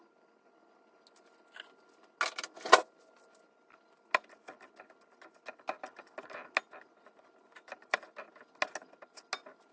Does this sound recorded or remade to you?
recorded